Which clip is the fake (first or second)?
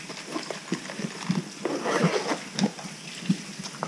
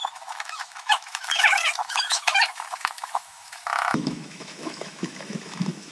second